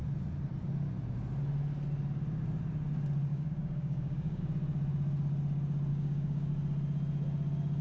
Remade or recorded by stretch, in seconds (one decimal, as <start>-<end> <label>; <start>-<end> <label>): 0.0-3.3 recorded; 3.3-4.4 remade; 4.4-5.9 recorded; 5.9-6.5 remade; 6.5-7.8 recorded